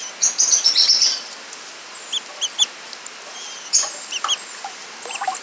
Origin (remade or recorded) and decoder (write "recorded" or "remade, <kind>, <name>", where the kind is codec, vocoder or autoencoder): recorded